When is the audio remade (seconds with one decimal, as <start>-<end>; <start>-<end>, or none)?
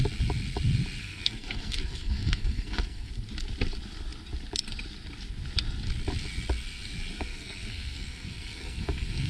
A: 1.0-3.1; 7.1-9.3